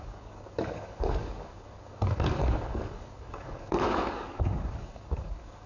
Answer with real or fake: fake